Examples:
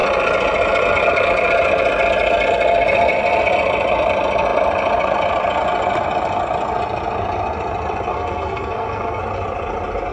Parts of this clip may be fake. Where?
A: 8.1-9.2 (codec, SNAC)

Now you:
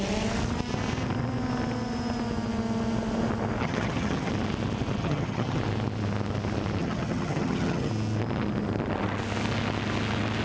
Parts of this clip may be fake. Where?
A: 3.6-4.3 (vocoder, HiFi-GAN); 5.0-5.6; 6.8-7.9

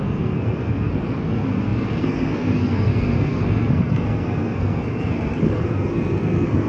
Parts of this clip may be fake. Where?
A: 0.0-6.7 (codec, SNAC)

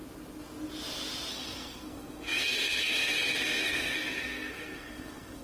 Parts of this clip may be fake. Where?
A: 1.3-5.4 (codec, SNAC)

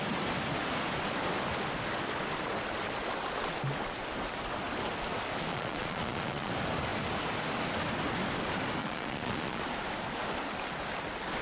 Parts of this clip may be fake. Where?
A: 5.5-6.5 (vocoder, Vocos); 8.8-9.6

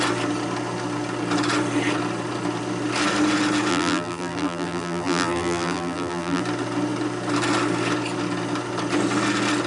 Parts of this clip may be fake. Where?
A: 3.7-6.4 (vocoder, BigVGAN v2)

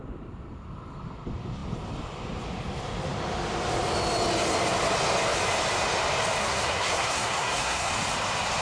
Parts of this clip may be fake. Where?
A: 6.4-7.9 (codec, SNAC)